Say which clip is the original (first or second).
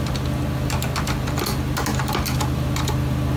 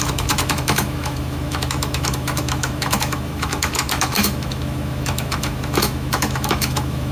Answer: first